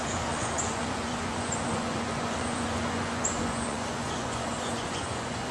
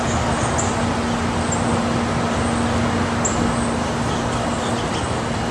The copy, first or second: first